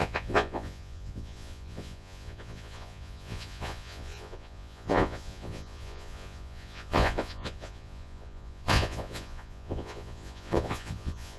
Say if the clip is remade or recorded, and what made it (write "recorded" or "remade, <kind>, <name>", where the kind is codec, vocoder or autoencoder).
remade, vocoder, Vocos